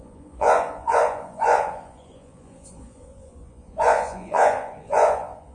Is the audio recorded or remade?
remade